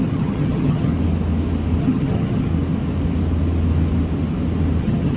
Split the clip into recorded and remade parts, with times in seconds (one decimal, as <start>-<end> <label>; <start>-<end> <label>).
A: 0.0-0.9 remade; 0.9-1.8 recorded; 1.8-2.5 remade; 2.5-4.8 recorded; 4.8-5.2 remade